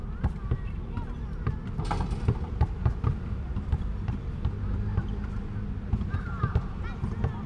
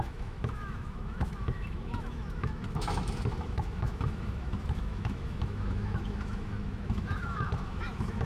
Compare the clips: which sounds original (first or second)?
first